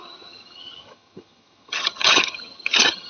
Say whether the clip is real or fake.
fake